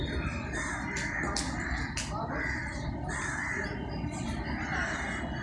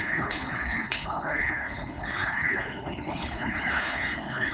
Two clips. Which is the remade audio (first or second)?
second